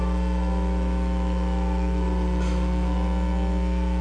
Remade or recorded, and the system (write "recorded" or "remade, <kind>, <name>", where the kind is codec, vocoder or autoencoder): remade, autoencoder, DAC-VAE